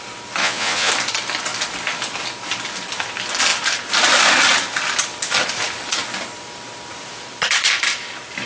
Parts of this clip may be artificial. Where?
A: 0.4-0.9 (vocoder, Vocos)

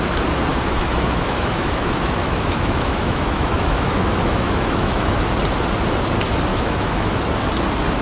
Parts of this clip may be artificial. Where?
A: 0.5-5.3 (autoencoder, DAC-VAE); 6.5-7.1

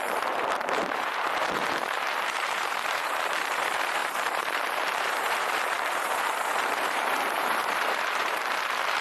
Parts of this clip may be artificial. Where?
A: 0.0-9.0 (vocoder, BigVGAN v2)

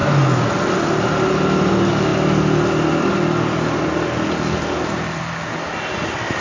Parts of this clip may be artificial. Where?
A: none

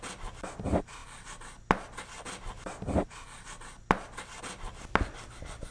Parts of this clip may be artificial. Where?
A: none

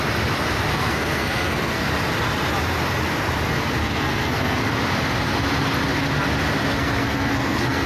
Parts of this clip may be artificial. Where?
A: 0.7-1.9 (codec, SNAC); 3.8-4.6; 6.7-7.9